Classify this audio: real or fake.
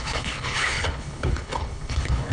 fake